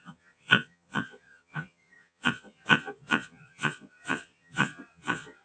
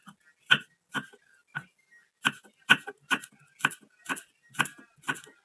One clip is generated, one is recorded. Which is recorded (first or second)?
second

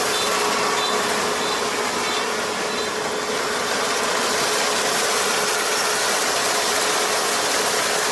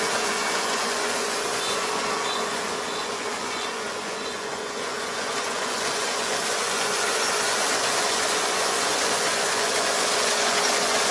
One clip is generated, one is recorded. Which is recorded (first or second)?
first